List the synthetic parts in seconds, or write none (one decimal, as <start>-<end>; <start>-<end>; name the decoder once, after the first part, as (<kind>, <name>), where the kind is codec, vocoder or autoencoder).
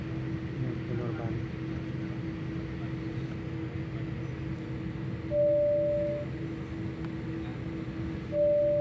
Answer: none